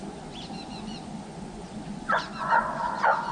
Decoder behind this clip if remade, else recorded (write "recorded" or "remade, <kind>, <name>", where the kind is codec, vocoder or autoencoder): remade, vocoder, Vocos